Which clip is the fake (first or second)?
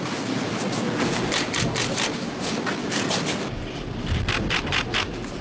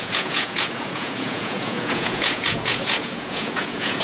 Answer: second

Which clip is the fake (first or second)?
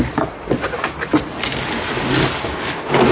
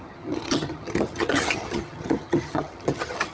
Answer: second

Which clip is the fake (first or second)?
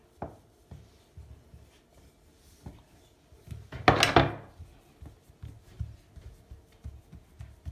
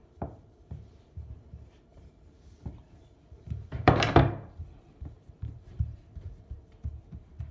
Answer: second